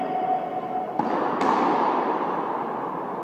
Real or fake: real